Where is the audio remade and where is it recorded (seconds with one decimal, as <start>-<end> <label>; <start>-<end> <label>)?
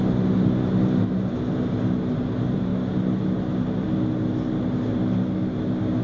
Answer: 0.0-6.0 recorded